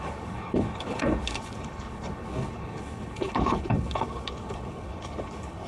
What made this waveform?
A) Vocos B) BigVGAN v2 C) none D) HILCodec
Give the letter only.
D